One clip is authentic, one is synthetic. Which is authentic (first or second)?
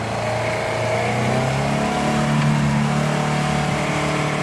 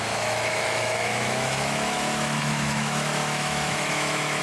first